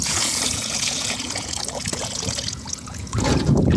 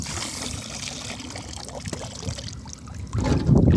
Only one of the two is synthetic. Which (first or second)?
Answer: first